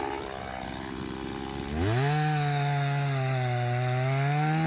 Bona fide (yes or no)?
yes